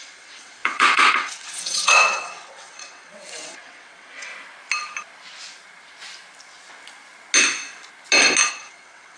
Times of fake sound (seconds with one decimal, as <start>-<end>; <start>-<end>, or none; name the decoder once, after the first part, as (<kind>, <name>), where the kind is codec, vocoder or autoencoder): 0.0-4.3 (vocoder, WaveNeXt); 8.5-9.2